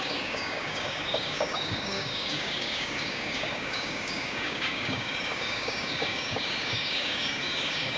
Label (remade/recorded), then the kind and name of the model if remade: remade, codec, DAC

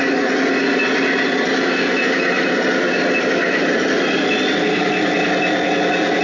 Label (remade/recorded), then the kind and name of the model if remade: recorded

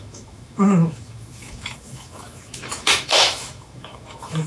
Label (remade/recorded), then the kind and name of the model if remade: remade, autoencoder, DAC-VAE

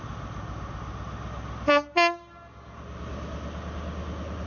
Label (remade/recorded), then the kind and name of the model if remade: recorded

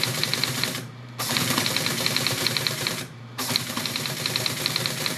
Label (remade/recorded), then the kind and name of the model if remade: remade, vocoder, BigVGAN v2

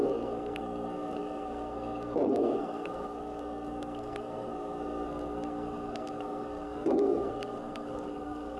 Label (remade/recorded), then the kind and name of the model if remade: remade, codec, SNAC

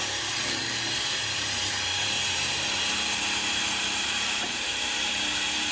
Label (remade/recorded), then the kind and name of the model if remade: remade, vocoder, BigVGAN v2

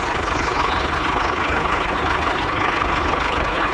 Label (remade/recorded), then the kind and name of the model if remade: remade, codec, HILCodec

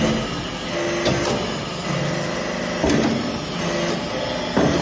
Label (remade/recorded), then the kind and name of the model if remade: recorded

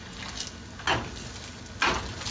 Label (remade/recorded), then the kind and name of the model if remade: recorded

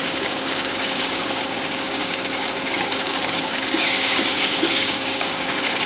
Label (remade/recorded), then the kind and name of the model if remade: remade, codec, DAC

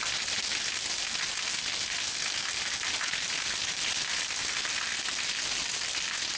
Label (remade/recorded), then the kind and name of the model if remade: recorded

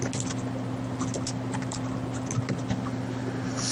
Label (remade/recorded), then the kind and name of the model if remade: recorded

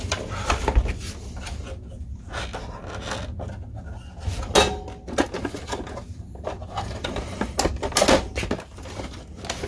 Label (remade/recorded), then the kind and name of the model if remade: recorded